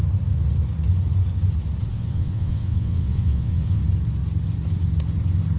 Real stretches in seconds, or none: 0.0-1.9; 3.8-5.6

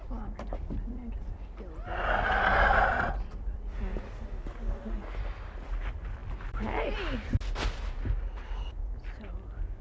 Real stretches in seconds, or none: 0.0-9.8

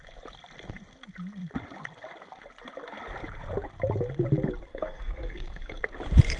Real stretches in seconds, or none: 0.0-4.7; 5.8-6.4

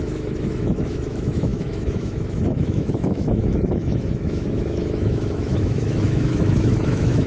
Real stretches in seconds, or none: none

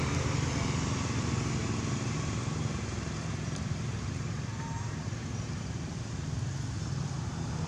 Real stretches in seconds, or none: 0.0-1.6; 6.0-7.7

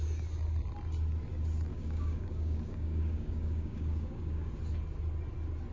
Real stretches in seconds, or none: 0.0-1.7; 4.5-5.7